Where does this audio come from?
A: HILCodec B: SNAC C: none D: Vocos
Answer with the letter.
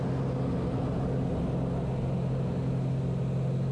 C